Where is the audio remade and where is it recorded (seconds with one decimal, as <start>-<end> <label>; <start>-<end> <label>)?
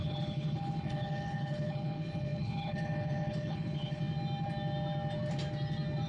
0.0-4.0 remade; 4.0-6.1 recorded